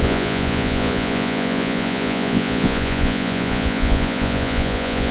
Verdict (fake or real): fake